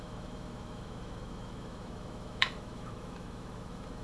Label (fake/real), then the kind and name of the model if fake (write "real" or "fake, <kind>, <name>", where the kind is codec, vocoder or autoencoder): fake, autoencoder, DAC-VAE